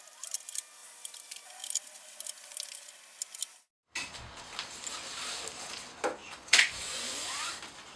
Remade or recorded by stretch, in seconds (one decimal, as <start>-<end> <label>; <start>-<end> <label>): 0.0-6.2 recorded; 6.2-7.5 remade; 7.5-8.0 recorded